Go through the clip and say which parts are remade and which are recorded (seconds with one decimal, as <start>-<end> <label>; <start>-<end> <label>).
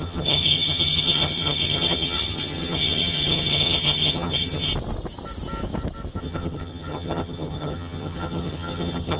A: 0.0-4.7 remade; 4.7-6.2 recorded; 6.2-9.2 remade